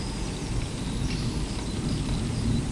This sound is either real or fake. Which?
real